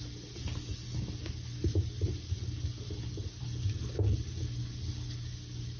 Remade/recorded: recorded